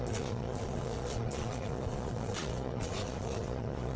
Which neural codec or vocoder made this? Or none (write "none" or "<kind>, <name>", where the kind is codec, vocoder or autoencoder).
vocoder, Vocos